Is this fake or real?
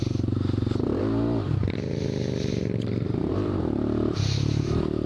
fake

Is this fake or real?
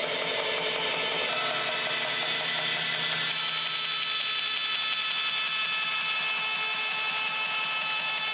real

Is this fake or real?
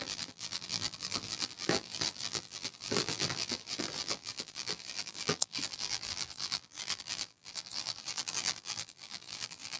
fake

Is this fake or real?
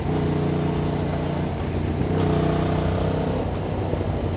real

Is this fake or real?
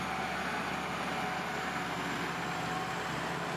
real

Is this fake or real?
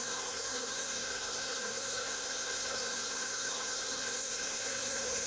fake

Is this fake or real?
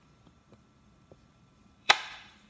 fake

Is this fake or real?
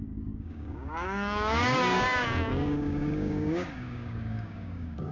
fake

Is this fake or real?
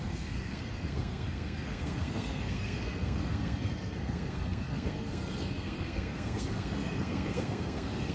fake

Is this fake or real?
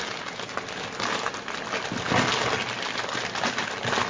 real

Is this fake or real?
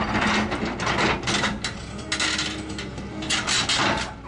real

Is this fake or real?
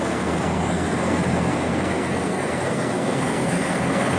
fake